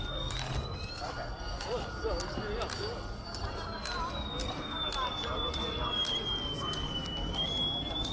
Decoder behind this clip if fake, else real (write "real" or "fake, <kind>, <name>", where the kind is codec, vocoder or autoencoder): real